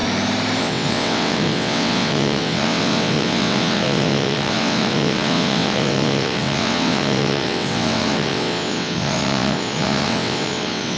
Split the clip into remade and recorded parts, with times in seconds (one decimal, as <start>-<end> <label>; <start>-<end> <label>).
0.0-0.6 recorded; 0.6-11.0 remade